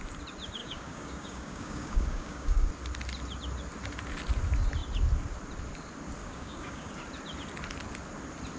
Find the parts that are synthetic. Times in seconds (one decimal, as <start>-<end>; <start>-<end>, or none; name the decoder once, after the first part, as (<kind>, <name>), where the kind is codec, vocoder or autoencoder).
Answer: 0.6-2.7 (codec, DAC); 6.2-6.9